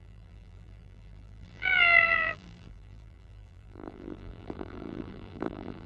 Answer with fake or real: fake